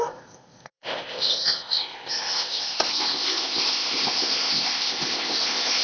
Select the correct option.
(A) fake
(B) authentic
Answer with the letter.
A